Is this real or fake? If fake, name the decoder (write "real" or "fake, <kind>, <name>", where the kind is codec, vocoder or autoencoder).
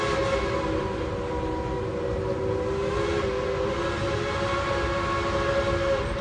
real